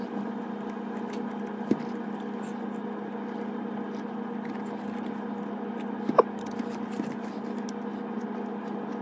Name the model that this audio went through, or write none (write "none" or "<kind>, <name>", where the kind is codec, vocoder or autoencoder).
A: none